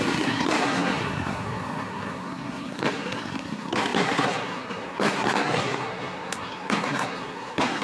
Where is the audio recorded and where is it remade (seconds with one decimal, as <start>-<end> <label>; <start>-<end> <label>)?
0.0-7.8 remade